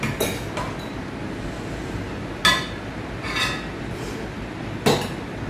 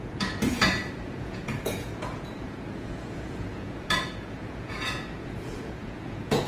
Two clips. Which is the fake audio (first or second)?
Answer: second